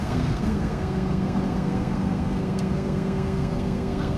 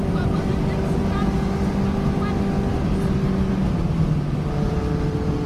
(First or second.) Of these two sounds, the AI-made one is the first